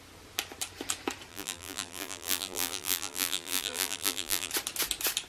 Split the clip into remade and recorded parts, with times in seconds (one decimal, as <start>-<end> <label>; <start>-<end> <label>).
0.0-1.3 recorded; 1.3-4.5 remade; 4.5-5.3 recorded